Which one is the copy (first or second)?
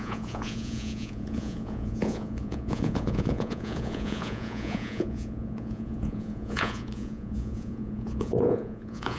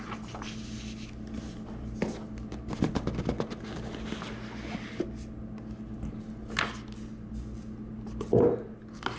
first